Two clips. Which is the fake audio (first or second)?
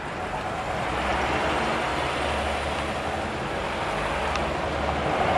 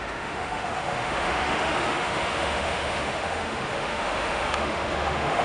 second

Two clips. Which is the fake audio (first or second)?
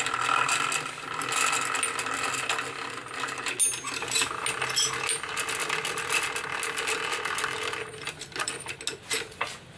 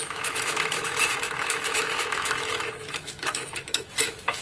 second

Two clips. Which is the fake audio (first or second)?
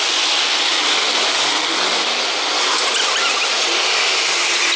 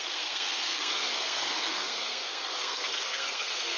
second